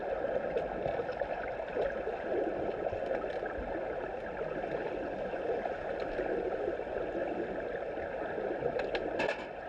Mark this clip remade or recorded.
recorded